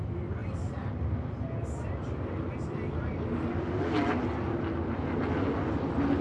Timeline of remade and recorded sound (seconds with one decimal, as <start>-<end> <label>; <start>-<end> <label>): 0.0-6.2 recorded